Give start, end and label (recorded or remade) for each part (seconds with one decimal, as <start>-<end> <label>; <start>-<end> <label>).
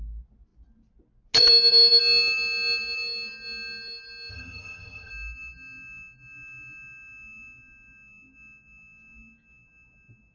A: 0.0-4.3 recorded; 4.3-5.1 remade; 5.1-10.3 recorded